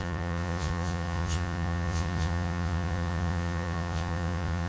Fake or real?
fake